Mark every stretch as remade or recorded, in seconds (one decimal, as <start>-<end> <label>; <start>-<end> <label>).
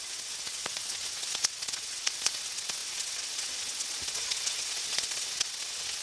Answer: 0.0-6.0 remade